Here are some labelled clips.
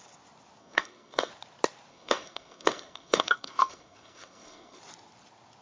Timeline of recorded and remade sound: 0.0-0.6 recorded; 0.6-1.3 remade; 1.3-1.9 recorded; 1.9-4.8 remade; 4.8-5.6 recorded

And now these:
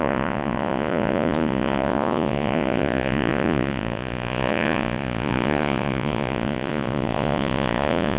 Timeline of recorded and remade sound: 0.0-8.2 remade

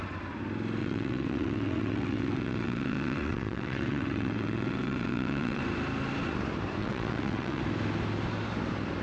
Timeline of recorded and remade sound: 0.0-0.8 recorded; 0.8-5.6 remade; 5.6-6.8 recorded; 6.8-7.6 remade; 7.6-9.0 recorded

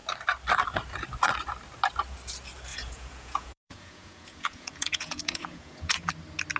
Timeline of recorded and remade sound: 0.0-2.7 recorded; 2.7-6.1 remade; 6.1-6.6 recorded